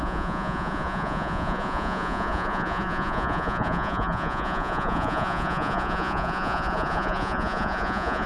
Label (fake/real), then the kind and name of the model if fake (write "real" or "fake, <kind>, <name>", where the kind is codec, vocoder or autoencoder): fake, vocoder, Vocos